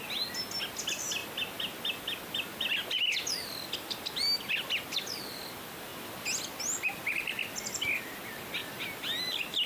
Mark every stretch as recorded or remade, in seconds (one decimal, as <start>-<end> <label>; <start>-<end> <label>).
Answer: 0.0-9.7 recorded